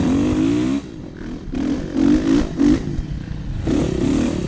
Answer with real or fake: real